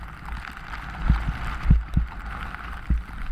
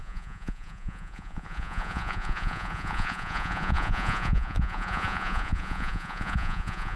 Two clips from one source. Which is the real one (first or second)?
first